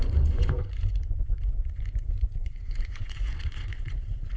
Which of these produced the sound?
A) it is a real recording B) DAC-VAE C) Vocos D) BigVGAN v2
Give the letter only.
C